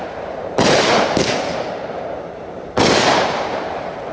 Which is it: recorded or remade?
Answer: remade